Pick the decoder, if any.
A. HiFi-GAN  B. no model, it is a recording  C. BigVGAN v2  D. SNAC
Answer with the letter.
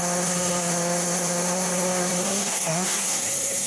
D